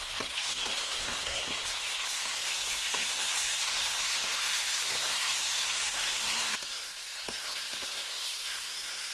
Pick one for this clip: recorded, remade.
remade